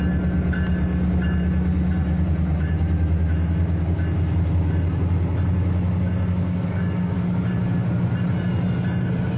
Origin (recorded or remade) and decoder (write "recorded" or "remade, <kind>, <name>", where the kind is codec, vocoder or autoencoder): recorded